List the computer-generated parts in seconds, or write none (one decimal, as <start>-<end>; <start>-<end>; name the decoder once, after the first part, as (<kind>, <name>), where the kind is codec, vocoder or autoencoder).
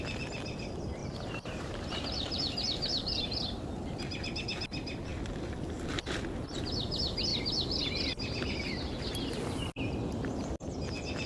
1.0-3.8 (vocoder, BigVGAN v2); 7.3-9.3